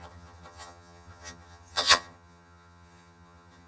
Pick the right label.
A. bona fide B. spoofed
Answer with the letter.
B